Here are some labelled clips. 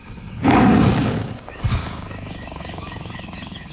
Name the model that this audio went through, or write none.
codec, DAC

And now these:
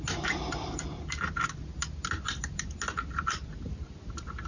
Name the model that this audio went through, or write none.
none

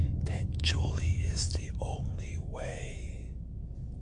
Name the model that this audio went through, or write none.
codec, DAC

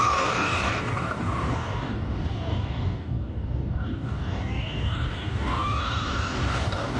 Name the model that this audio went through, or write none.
codec, DAC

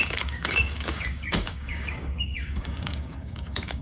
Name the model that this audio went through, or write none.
codec, DAC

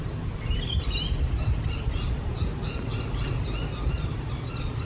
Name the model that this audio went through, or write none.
none